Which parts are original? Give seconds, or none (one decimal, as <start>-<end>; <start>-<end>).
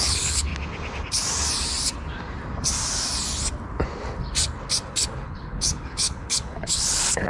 0.5-4.9